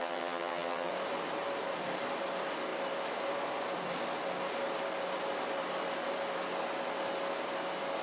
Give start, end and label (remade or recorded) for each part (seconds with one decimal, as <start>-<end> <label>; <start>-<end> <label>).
0.0-0.9 remade; 0.9-8.0 recorded